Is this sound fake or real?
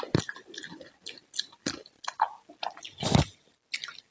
real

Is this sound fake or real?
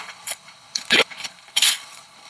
fake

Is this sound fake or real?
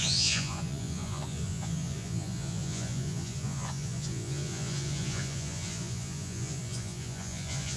fake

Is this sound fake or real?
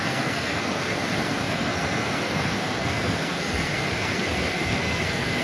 fake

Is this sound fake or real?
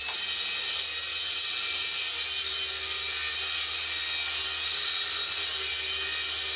real